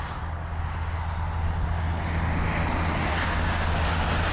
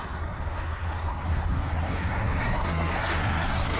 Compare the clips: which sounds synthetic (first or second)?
second